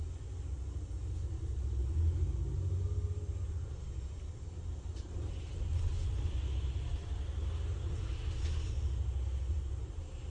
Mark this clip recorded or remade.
recorded